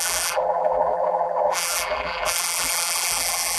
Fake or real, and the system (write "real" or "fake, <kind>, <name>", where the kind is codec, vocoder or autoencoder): fake, vocoder, BigVGAN v2